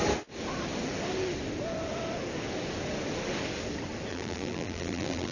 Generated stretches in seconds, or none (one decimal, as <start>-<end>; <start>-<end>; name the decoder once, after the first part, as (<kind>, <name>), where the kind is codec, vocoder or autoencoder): 4.1-5.3 (vocoder, BigVGAN v2)